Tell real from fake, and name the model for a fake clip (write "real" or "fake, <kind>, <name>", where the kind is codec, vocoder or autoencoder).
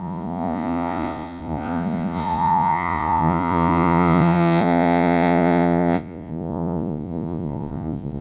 fake, vocoder, Vocos